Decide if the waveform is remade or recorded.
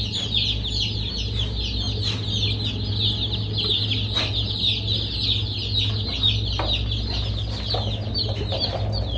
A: recorded